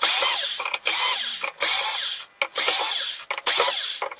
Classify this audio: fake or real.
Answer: real